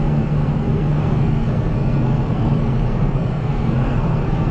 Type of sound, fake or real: fake